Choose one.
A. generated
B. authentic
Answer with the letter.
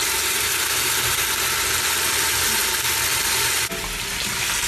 B